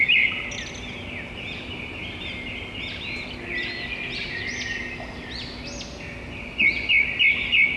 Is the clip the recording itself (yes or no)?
yes